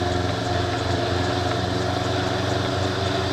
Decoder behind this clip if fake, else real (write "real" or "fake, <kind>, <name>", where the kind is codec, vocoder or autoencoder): real